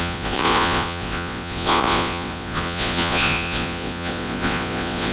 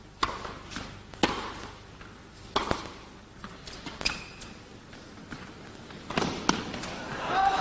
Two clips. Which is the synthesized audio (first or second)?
first